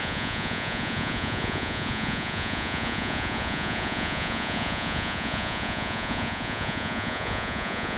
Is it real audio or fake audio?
fake